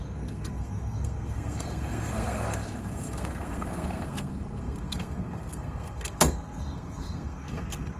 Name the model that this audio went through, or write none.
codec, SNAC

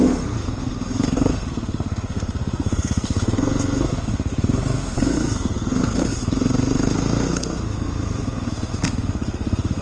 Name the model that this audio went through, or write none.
codec, SNAC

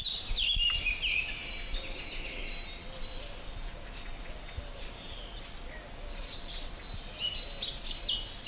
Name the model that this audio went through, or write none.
none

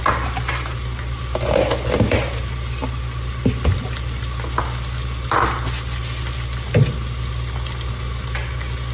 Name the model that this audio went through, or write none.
none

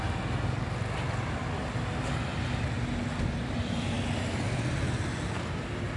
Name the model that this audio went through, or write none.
none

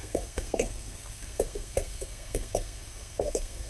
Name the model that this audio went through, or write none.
codec, SNAC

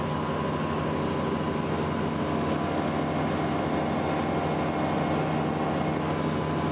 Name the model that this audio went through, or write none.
none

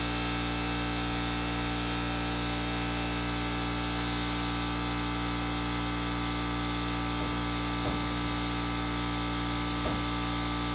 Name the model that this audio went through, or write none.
none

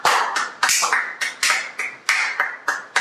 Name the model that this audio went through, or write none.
none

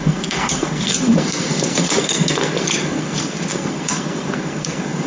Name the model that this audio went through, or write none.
codec, SNAC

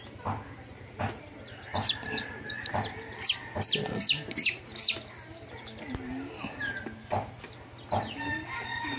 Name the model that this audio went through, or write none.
none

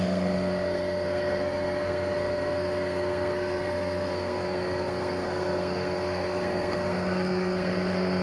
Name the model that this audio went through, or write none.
codec, SNAC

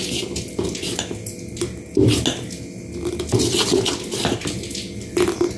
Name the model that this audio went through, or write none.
none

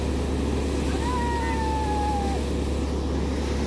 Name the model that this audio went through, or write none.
none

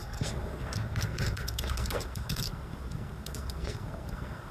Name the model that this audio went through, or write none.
codec, SNAC